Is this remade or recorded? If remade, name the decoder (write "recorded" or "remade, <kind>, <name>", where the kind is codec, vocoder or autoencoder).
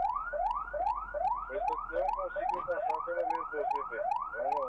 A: recorded